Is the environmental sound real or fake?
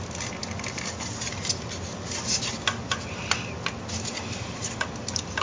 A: real